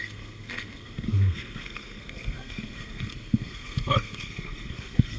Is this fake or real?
fake